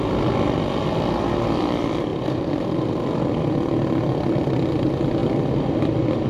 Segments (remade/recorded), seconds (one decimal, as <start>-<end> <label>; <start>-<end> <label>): 0.0-2.1 recorded; 2.1-2.9 remade; 2.9-6.3 recorded